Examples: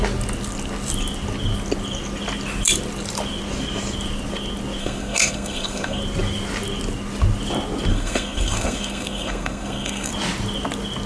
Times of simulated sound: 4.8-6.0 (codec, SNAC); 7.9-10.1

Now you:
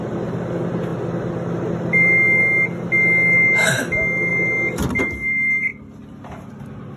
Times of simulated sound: none

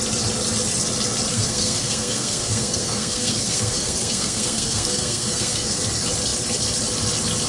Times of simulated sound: 1.3-5.8 (codec, SNAC)

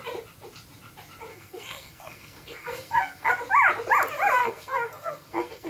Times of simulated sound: 1.3-3.3 (codec, SNAC); 4.4-5.7